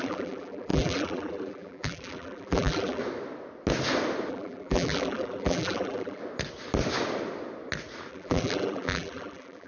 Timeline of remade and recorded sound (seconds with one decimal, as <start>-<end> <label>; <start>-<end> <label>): 0.0-3.0 remade; 3.0-4.3 recorded; 4.3-6.2 remade; 6.2-8.1 recorded; 8.1-9.7 remade